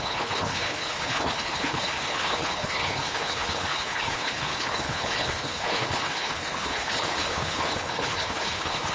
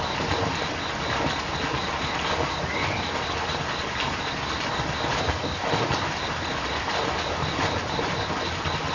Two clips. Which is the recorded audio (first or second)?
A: second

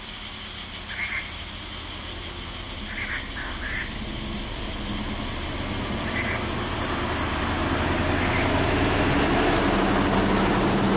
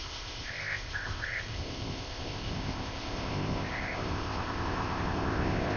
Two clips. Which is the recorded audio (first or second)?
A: first